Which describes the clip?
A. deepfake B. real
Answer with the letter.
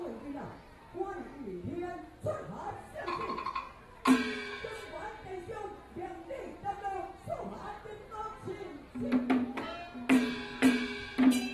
B